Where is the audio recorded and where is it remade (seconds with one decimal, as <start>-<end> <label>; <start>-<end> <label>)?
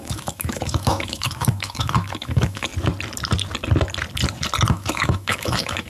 0.0-2.7 remade; 2.7-4.7 recorded; 4.7-5.9 remade